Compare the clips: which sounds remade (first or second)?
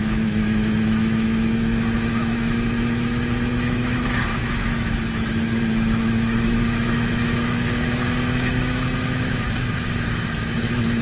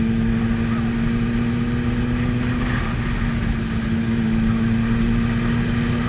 first